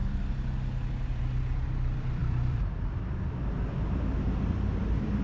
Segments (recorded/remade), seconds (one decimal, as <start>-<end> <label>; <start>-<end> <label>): 0.0-1.2 recorded; 1.2-5.2 remade